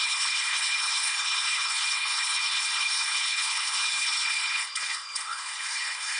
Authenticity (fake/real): fake